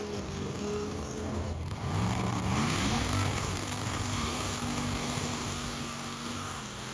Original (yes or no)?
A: no